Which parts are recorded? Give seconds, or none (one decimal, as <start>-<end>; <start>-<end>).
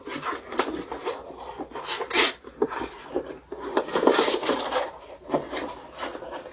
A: 0.0-6.5